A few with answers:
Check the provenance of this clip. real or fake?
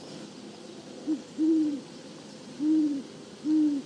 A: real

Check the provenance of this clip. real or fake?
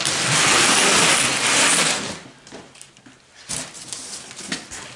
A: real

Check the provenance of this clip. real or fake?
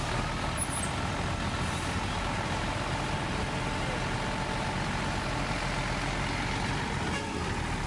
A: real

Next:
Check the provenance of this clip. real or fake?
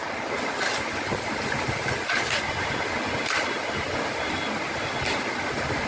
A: real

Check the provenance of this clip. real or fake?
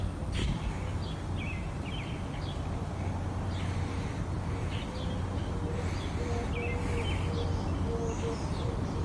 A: real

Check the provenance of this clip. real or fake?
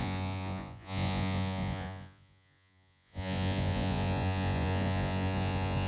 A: fake